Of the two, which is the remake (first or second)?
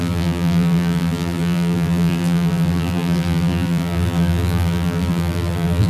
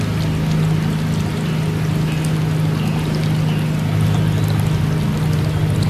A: first